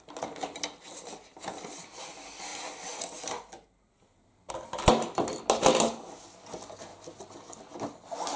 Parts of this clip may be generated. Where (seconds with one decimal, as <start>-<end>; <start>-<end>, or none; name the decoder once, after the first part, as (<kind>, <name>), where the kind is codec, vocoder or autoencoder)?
none